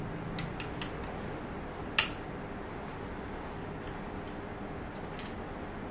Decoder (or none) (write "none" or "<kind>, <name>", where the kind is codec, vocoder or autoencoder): none